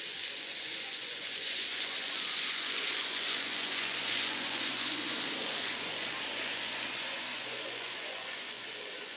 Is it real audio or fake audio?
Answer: fake